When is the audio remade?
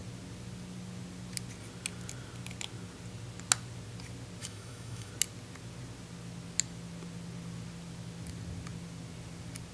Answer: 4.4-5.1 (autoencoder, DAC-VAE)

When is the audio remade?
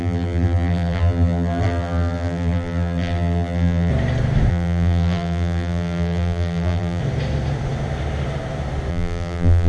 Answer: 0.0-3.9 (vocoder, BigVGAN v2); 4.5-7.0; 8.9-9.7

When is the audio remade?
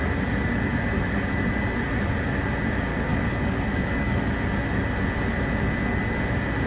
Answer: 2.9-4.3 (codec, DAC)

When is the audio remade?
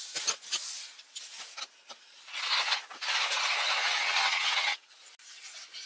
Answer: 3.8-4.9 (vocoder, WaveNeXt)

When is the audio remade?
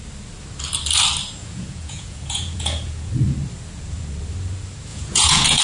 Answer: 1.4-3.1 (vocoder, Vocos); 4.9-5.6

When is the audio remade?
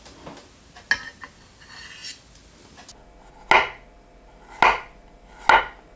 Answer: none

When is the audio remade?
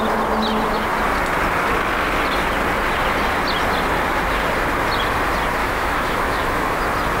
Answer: 5.6-6.8 (autoencoder, DAC-VAE)